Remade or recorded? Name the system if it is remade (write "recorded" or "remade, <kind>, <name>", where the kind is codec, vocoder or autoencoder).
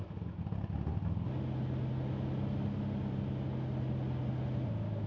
recorded